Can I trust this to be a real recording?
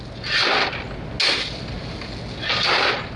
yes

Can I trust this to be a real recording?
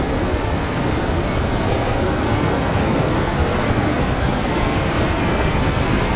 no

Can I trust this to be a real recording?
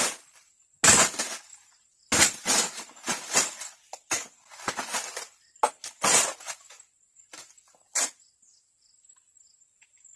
yes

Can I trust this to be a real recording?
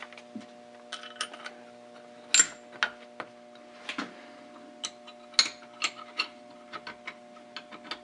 yes